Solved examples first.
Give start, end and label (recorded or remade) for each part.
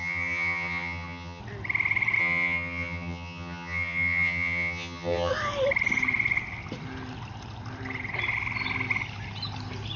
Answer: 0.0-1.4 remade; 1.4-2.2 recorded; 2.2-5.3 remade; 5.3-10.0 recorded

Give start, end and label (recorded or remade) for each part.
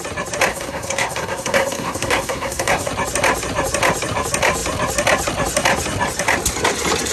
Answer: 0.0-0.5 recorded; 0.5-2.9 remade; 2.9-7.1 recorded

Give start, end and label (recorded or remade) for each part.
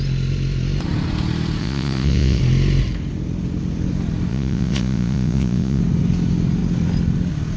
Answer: 0.0-1.6 recorded; 1.6-2.4 remade; 2.4-4.3 recorded; 4.3-5.8 remade; 5.8-7.6 recorded